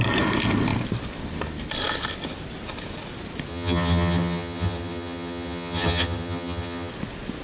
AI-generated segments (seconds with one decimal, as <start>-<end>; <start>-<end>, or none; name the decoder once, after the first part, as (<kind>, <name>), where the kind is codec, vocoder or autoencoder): 3.5-6.9 (vocoder, HiFi-GAN)